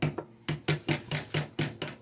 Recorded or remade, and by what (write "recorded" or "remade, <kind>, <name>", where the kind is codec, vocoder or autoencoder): recorded